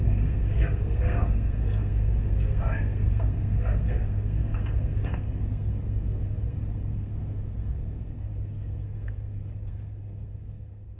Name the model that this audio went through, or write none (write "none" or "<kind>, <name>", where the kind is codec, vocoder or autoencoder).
codec, SNAC